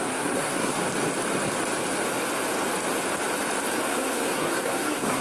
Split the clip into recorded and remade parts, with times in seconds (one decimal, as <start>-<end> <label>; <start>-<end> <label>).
0.0-0.8 remade; 0.8-3.9 recorded; 3.9-5.2 remade